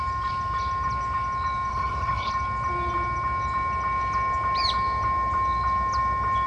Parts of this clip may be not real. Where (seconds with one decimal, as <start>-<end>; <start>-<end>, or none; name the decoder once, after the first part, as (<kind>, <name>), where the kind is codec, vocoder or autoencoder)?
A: 1.7-2.3 (codec, HILCodec)